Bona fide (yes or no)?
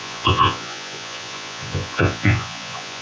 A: no